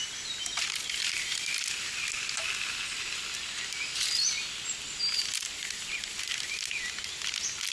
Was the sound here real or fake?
real